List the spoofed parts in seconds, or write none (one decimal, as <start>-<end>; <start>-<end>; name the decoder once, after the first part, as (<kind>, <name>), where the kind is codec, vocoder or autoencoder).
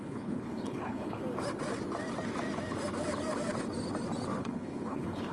0.0-1.2 (codec, HILCodec); 4.4-5.3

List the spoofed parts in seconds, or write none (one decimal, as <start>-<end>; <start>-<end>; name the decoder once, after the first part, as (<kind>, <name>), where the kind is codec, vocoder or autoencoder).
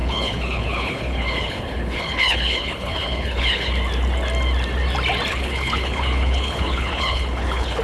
0.0-3.7 (codec, HILCodec); 5.3-7.8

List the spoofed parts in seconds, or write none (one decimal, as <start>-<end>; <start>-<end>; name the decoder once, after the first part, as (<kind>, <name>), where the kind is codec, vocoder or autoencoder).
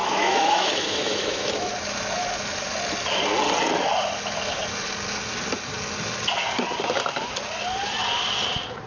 0.0-1.7 (autoencoder, DAC-VAE)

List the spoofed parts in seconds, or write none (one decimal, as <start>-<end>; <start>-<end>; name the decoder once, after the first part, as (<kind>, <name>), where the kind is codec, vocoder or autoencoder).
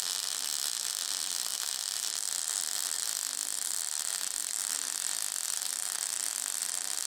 none